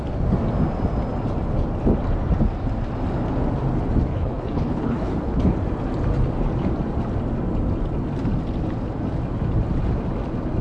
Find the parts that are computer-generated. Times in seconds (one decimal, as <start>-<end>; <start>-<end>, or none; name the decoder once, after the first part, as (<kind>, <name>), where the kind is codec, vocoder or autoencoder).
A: 4.1-5.4 (codec, HILCodec)